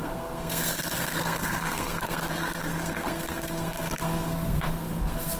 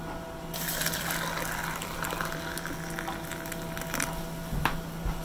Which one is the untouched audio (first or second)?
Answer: second